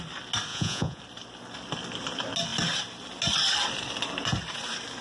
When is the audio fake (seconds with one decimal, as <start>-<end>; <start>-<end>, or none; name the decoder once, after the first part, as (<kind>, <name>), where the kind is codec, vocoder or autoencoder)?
0.5-1.0 (vocoder, Vocos)